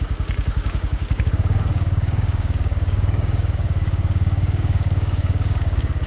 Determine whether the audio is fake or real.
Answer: fake